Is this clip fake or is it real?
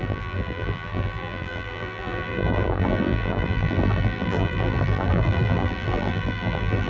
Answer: fake